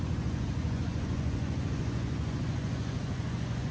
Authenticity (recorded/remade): remade